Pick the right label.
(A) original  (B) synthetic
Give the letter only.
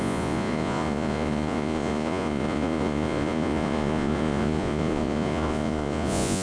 B